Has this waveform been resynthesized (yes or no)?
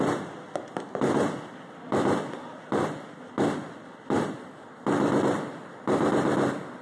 no